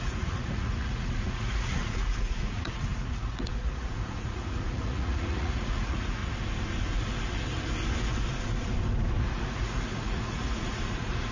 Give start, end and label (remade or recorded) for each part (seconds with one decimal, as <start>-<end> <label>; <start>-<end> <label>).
0.0-6.2 remade; 6.2-9.2 recorded; 9.2-11.3 remade